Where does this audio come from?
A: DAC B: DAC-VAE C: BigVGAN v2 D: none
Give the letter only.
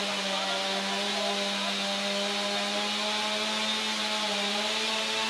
D